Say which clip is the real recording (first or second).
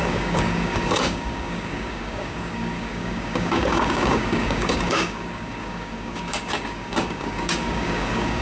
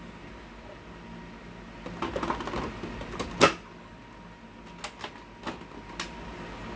second